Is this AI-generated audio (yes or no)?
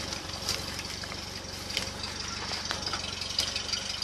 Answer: no